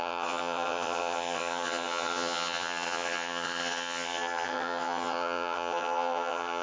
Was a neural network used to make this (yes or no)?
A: yes